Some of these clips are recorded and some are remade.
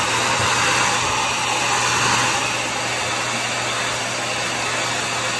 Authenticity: recorded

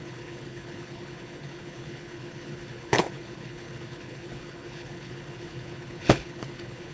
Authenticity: remade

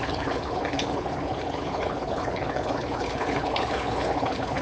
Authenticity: remade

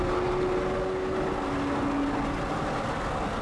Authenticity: recorded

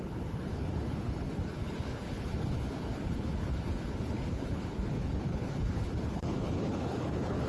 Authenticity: remade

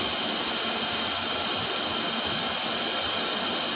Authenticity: recorded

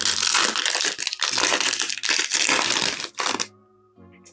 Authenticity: recorded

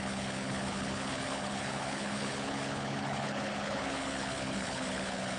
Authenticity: remade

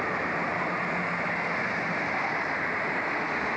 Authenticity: recorded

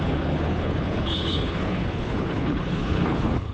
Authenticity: remade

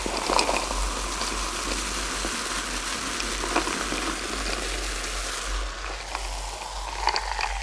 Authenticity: recorded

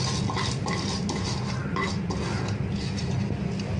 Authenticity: recorded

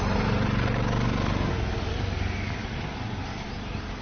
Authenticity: recorded